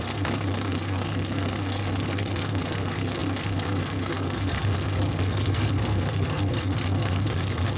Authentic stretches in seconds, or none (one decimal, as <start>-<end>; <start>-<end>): none